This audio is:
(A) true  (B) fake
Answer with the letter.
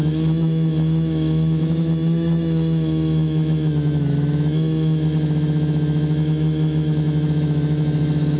B